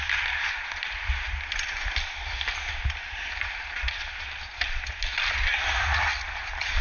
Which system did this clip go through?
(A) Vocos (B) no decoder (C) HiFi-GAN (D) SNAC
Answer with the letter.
B